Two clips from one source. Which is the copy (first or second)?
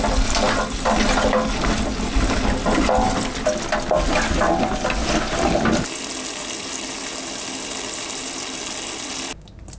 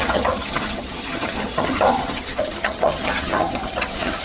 second